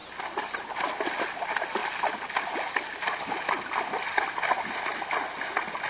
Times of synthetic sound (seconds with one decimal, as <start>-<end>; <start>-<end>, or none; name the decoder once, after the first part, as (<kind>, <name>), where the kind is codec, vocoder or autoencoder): none